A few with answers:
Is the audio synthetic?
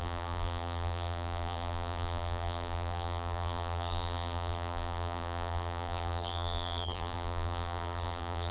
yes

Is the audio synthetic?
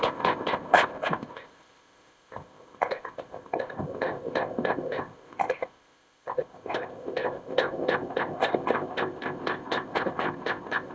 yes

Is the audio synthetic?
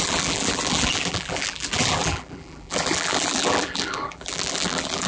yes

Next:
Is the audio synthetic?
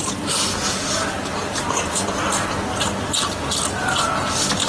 no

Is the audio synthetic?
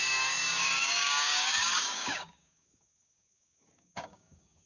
yes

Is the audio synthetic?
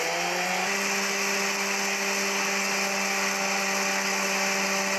no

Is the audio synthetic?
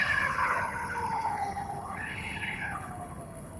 yes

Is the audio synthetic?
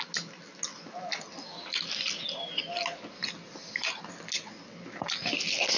no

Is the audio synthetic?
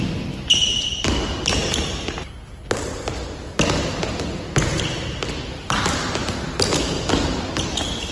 no